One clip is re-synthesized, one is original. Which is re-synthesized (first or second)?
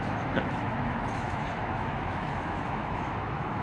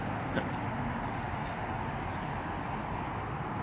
first